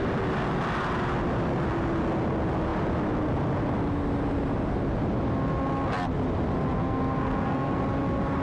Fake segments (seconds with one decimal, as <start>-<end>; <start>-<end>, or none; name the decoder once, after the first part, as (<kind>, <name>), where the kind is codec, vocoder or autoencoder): 6.8-7.8 (codec, SNAC)